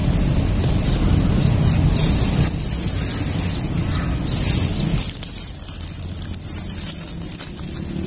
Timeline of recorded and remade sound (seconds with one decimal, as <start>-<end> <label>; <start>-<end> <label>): 0.0-8.1 recorded